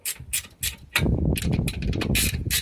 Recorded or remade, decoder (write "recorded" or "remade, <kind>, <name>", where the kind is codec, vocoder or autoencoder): remade, vocoder, BigVGAN v2